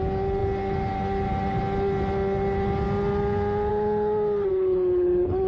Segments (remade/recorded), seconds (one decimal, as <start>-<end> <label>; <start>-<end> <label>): 0.0-4.5 recorded; 4.5-5.5 remade